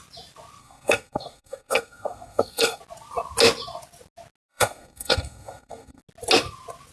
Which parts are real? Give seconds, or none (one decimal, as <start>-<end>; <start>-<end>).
0.0-0.6; 2.8-4.5; 6.0-6.9

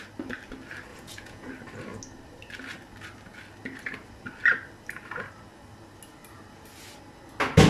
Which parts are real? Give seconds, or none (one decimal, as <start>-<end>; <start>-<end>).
0.0-0.9; 1.5-7.7

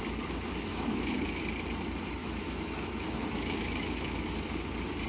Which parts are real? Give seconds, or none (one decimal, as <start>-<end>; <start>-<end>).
0.0-0.7; 1.4-2.2; 4.3-5.1

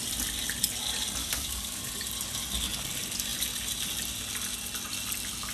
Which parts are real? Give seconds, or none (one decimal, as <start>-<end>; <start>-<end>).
0.0-1.2; 1.9-5.5

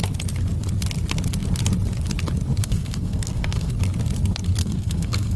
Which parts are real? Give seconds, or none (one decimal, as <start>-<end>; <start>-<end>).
0.0-2.6; 3.7-4.6

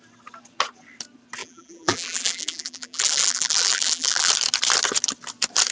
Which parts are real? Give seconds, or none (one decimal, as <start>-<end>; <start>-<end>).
0.0-1.4; 4.3-5.7